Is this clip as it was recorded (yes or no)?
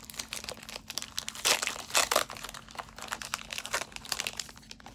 yes